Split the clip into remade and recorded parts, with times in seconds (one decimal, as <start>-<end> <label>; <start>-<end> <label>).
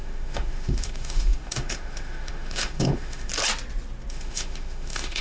0.0-3.3 remade; 3.3-4.1 recorded; 4.1-5.2 remade